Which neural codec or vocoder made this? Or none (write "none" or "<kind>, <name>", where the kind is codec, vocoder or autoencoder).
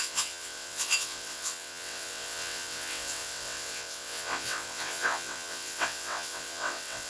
vocoder, WaveNeXt